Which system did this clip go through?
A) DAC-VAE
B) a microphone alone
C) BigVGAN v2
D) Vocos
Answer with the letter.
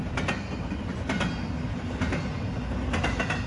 B